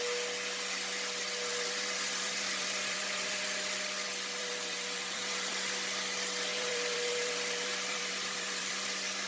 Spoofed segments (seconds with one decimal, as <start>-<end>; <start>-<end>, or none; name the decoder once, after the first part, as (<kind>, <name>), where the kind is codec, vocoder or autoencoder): 1.5-5.5 (vocoder, BigVGAN v2); 6.5-9.3